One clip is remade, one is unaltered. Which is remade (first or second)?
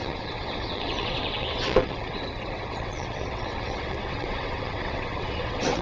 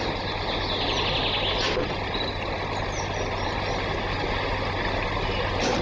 first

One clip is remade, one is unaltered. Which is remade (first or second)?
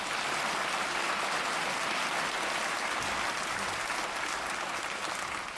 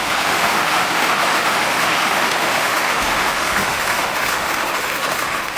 second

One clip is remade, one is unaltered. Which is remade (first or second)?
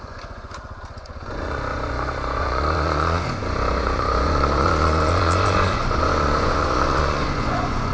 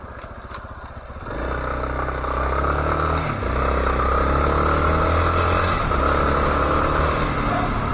first